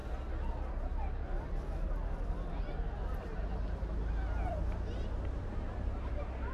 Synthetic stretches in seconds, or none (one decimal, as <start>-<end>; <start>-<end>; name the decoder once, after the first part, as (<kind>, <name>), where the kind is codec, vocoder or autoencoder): none